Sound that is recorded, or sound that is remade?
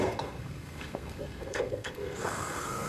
remade